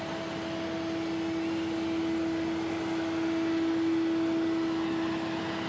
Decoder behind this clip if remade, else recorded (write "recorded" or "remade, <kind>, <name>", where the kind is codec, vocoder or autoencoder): recorded